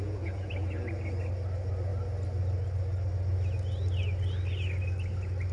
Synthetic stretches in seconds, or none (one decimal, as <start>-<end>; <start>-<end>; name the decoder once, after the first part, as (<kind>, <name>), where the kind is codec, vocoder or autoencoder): 0.0-0.5 (vocoder, Vocos)